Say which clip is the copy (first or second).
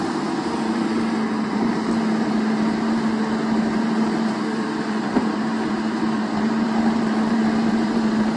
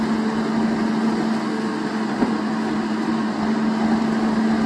first